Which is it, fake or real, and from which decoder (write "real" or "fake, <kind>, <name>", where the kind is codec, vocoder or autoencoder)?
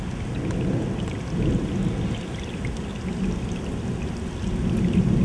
real